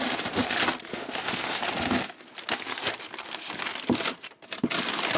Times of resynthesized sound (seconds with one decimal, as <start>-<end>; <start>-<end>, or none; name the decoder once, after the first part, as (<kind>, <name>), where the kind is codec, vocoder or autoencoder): 0.9-1.6 (autoencoder, DAC-VAE)